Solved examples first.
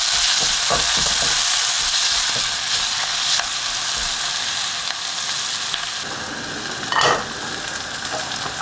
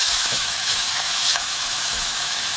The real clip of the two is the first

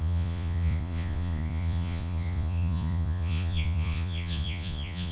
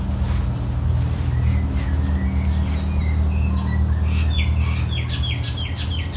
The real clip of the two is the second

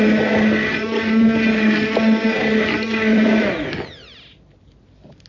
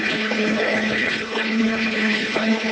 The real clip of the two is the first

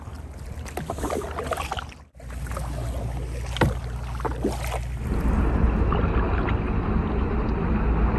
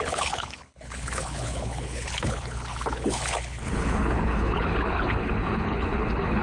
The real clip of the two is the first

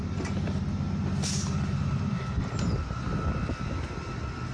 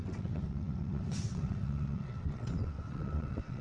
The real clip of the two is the first